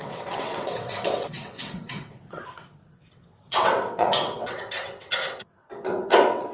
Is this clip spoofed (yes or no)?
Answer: yes